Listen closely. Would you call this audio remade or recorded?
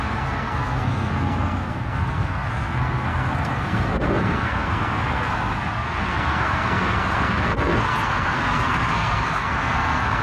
remade